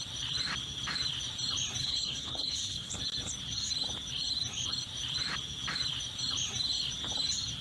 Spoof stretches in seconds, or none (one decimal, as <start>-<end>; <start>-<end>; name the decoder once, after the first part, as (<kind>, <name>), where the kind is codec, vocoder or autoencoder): 1.8-2.9 (codec, HILCodec)